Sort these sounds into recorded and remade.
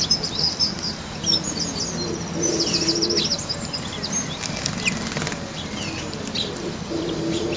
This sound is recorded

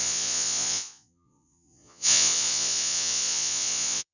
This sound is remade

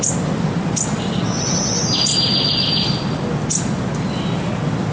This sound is recorded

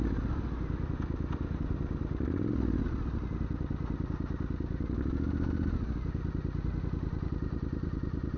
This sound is recorded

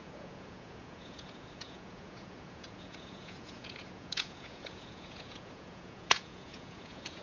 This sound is remade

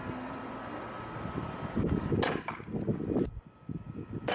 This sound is recorded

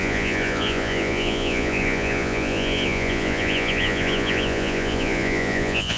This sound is remade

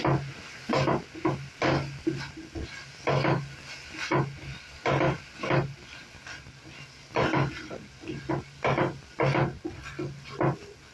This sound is recorded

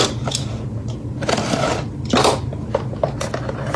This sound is recorded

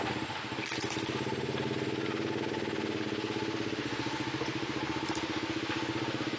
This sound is recorded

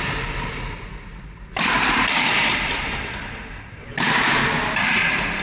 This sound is recorded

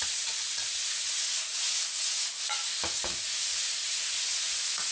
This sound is remade